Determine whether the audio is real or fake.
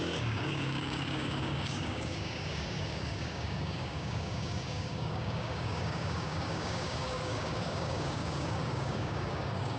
fake